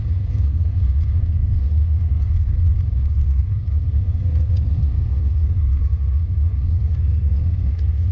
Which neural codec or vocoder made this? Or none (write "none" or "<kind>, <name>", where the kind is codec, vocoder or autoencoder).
codec, SNAC